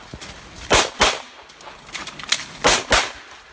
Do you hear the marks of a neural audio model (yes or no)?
no